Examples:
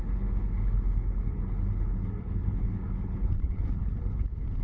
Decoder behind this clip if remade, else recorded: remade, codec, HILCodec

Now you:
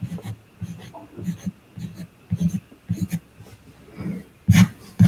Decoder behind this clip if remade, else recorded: recorded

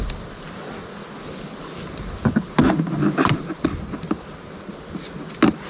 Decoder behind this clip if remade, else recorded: recorded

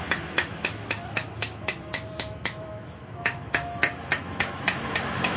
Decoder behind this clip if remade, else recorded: remade, autoencoder, DAC-VAE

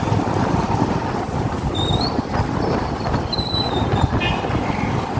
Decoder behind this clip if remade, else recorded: recorded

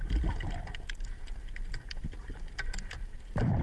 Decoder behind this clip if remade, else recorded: recorded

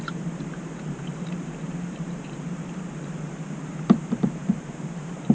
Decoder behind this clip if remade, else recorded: remade, vocoder, BigVGAN v2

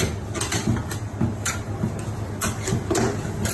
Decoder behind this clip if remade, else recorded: recorded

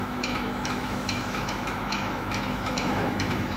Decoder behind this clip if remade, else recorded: remade, autoencoder, DAC-VAE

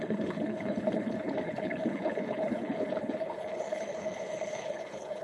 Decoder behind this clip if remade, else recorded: remade, codec, HILCodec